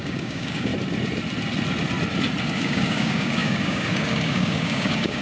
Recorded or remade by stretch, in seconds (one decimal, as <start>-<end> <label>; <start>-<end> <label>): 0.0-0.7 remade; 0.7-2.4 recorded; 2.4-5.2 remade